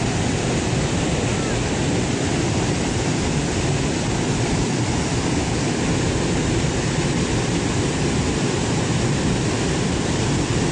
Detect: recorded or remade recorded